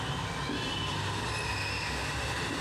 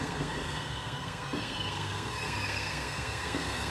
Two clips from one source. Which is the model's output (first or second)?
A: second